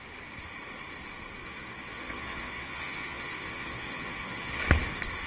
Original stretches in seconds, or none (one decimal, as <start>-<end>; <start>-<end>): 0.0-1.4; 4.6-5.3